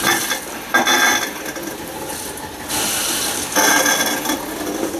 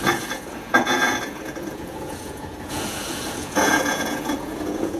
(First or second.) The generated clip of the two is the second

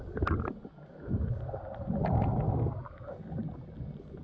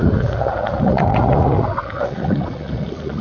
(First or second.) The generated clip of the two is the second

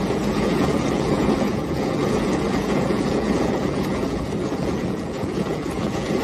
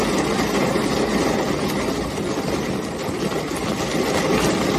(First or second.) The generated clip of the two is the first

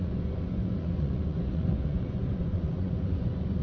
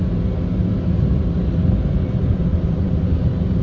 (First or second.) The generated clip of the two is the first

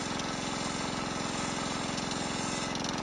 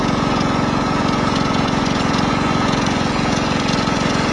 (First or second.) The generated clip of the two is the second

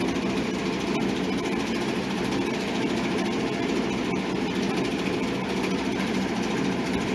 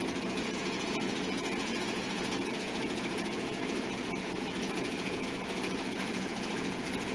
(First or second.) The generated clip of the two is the second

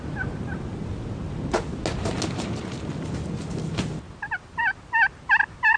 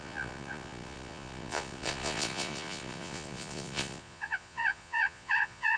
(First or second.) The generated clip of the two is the second